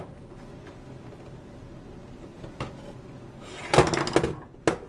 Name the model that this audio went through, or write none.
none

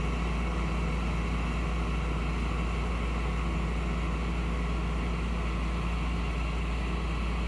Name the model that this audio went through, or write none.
none